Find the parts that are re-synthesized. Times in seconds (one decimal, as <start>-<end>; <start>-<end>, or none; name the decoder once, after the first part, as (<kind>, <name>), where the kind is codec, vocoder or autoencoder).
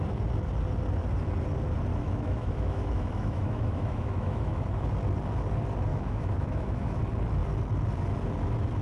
1.9-4.9 (autoencoder, DAC-VAE); 5.9-7.0